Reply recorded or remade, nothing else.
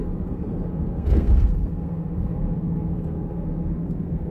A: remade